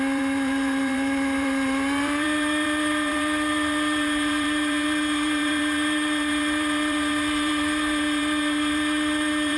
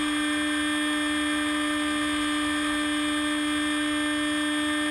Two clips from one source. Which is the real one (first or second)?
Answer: second